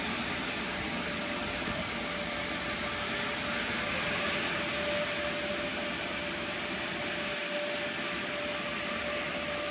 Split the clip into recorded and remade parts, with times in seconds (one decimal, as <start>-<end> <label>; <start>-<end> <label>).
0.0-9.7 recorded